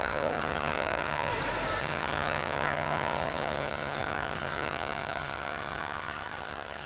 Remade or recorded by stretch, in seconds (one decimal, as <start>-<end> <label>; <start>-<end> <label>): 0.0-1.3 remade; 1.3-1.8 recorded; 1.8-6.9 remade